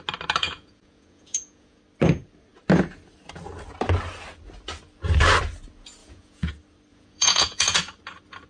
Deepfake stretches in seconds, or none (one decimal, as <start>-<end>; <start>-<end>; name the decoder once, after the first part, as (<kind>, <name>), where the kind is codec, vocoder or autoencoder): 0.4-1.8 (vocoder, Vocos); 6.0-6.5; 6.9-7.8